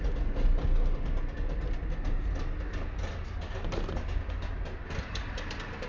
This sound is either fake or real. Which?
real